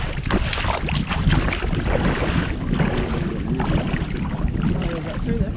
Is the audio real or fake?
real